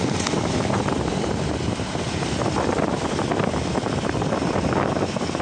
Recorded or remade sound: recorded